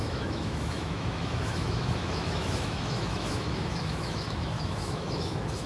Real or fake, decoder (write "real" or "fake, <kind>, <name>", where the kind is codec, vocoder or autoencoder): fake, autoencoder, DAC-VAE